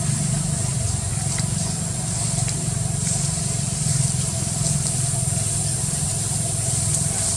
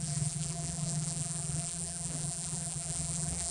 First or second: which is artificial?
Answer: second